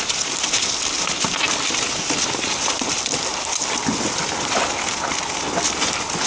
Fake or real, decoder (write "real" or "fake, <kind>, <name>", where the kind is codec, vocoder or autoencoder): real